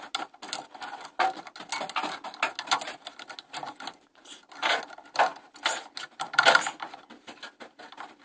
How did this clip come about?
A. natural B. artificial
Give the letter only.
A